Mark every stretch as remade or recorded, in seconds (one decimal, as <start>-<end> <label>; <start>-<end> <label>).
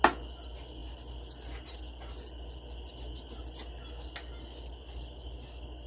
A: 0.0-5.9 recorded